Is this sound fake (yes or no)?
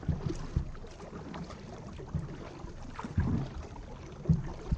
no